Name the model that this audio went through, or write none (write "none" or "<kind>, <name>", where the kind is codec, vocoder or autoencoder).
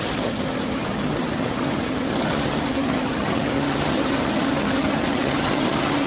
vocoder, HiFi-GAN